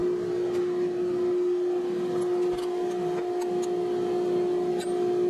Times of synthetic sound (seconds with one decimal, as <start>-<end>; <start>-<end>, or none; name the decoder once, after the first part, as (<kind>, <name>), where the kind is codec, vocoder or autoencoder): none